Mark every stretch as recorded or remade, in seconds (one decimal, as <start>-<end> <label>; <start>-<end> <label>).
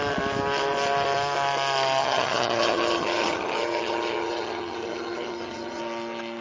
0.0-2.0 recorded; 2.0-5.8 remade; 5.8-6.4 recorded